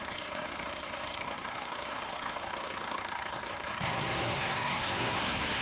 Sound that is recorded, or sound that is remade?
remade